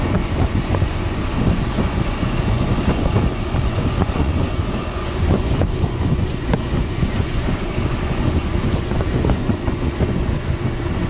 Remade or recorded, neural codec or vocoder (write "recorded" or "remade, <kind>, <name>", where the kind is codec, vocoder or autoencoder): remade, vocoder, Vocos